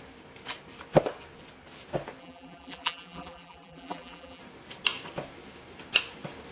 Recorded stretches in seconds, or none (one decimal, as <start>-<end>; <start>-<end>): 0.0-2.2; 4.4-6.5

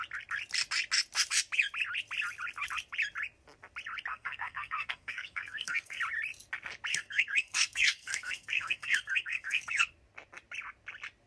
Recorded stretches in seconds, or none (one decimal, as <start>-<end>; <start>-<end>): 0.0-4.1; 6.0-6.9; 9.9-11.3

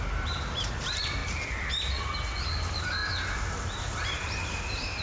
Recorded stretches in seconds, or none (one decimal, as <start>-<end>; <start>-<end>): 1.2-2.4; 3.0-3.9

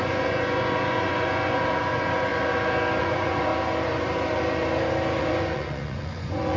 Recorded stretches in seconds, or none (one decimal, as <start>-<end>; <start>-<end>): 2.3-3.0; 3.5-5.2

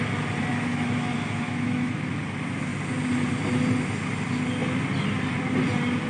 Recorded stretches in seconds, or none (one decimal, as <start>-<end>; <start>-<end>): 0.0-0.5; 2.2-6.1